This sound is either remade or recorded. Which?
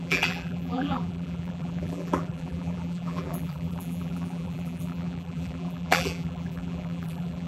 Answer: remade